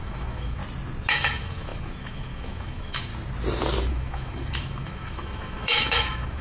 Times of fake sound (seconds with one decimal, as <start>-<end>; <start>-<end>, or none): 0.0-0.6; 1.1-3.1; 3.9-6.4